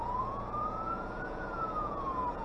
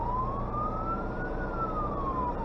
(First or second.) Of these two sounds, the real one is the second